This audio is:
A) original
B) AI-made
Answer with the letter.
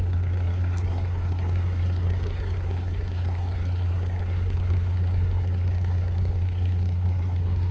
B